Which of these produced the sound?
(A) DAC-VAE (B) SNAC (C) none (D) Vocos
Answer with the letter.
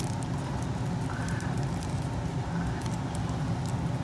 C